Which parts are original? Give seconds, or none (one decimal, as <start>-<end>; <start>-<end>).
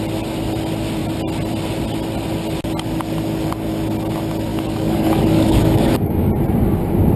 0.0-4.5; 6.3-7.2